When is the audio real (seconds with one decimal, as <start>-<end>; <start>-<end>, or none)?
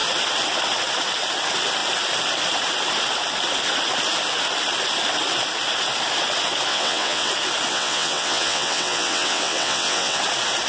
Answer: 0.0-6.7; 7.3-7.7; 10.2-10.7